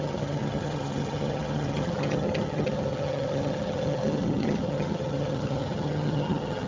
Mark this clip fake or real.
fake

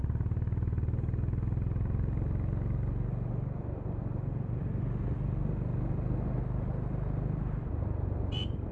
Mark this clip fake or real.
real